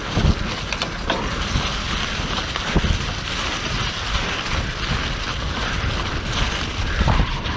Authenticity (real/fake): real